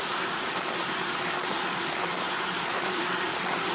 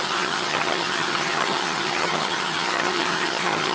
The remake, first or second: second